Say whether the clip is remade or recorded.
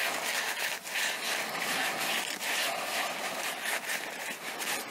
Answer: recorded